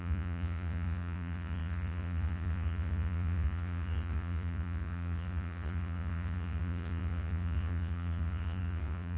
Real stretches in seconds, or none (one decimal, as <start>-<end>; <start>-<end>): none